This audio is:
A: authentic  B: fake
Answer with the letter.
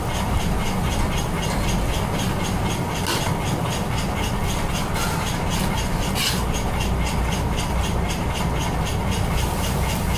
A